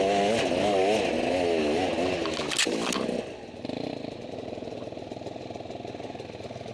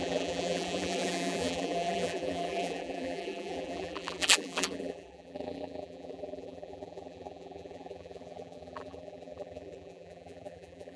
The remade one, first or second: second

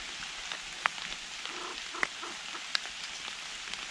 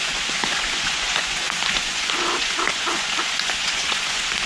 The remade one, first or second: second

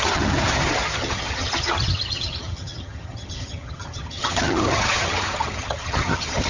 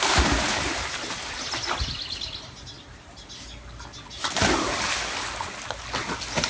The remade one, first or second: first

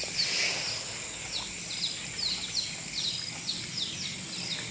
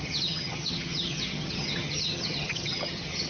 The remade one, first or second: second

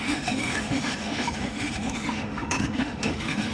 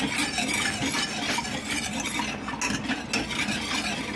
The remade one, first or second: first